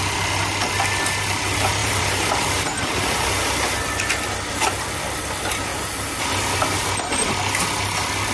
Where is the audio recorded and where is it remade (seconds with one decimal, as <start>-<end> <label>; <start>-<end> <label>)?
0.0-1.8 recorded; 1.8-2.6 remade; 2.6-5.7 recorded; 5.7-6.2 remade; 6.2-8.3 recorded